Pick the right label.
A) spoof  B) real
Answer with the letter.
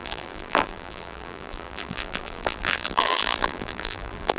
A